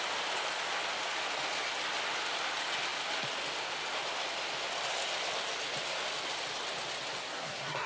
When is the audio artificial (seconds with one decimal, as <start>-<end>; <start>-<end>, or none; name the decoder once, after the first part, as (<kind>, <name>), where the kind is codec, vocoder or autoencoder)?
7.2-7.9 (codec, SNAC)